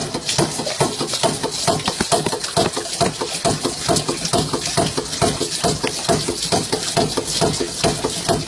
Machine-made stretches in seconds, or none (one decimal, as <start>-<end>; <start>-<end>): none